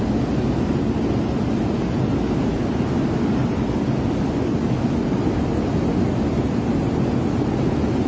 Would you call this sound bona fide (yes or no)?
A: yes